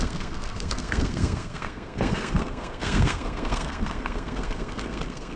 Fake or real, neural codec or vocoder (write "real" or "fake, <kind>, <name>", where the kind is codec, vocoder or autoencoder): fake, codec, SNAC